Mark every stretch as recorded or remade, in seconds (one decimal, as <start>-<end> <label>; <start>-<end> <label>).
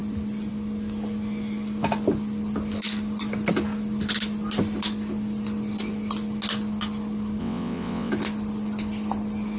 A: 0.0-7.4 recorded; 7.4-8.1 remade; 8.1-9.6 recorded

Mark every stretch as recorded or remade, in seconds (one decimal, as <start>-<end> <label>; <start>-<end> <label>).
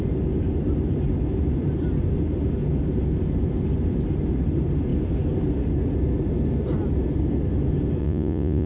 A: 0.0-8.0 recorded; 8.0-8.7 remade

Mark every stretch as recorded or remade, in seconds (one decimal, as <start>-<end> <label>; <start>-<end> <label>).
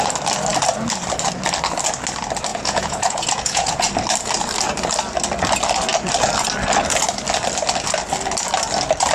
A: 0.0-2.5 recorded; 2.5-3.9 remade; 3.9-9.1 recorded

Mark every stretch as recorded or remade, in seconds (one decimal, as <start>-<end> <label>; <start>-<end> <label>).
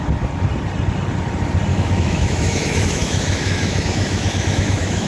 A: 0.0-1.7 recorded; 1.7-5.1 remade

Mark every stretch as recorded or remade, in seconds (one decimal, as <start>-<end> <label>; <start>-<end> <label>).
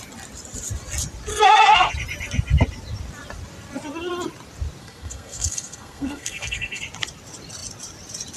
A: 0.0-1.3 recorded; 1.3-1.9 remade; 1.9-4.8 recorded; 4.8-6.8 remade; 6.8-8.4 recorded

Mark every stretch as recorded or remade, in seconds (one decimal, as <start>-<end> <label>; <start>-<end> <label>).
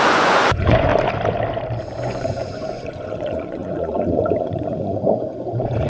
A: 0.0-0.9 remade; 0.9-2.0 recorded; 2.0-5.9 remade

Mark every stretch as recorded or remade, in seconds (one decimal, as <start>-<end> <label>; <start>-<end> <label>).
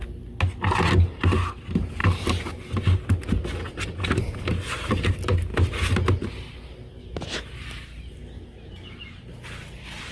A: 0.0-10.1 recorded